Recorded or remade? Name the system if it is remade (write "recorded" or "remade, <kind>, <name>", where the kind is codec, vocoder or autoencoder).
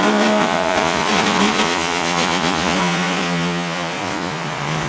remade, vocoder, Vocos